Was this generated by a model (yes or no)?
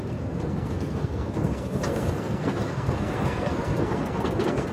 yes